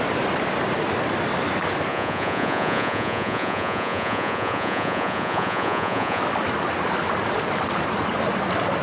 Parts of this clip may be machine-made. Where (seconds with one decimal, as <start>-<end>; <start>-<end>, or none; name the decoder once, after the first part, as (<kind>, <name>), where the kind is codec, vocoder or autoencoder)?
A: 1.9-6.2 (vocoder, Vocos)